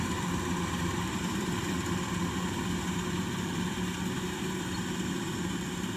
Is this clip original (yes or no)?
no